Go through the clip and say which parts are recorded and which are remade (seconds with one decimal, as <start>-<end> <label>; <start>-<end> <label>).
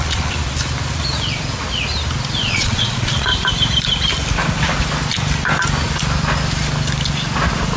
0.0-0.4 remade; 0.4-2.4 recorded; 2.4-3.3 remade; 3.3-7.8 recorded